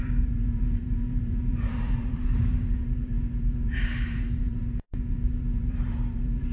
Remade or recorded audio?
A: remade